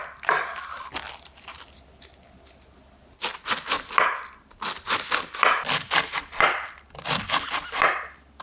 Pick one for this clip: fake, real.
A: real